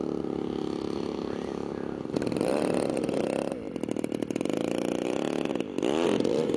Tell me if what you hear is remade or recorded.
recorded